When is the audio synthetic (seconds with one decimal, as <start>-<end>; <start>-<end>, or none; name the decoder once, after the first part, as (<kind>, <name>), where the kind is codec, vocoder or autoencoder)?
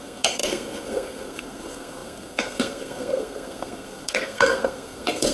0.0-5.3 (codec, SNAC)